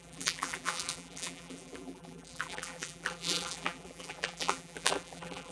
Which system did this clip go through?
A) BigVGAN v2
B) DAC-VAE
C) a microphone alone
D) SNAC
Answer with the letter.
A